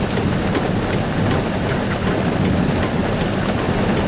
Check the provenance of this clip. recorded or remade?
recorded